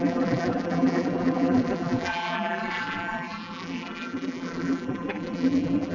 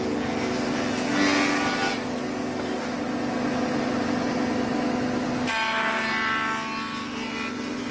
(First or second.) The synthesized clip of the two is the first